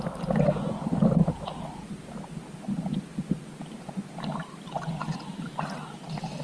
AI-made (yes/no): no